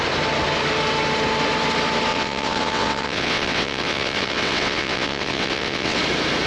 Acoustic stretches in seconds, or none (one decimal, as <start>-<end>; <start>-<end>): 0.0-2.1; 6.0-6.5